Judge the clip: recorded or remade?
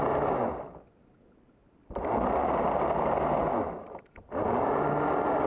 recorded